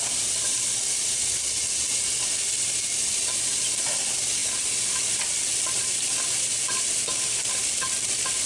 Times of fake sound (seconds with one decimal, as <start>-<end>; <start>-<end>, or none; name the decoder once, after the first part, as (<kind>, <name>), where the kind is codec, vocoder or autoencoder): 0.0-1.4 (vocoder, BigVGAN v2); 3.0-8.5